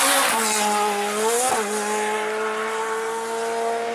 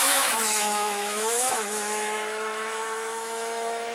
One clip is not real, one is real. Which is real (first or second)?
first